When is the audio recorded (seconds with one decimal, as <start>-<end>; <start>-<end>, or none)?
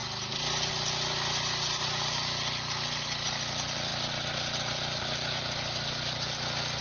0.0-6.8